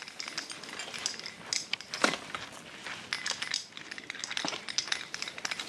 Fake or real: real